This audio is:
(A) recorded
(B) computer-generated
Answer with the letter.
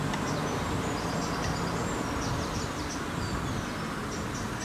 A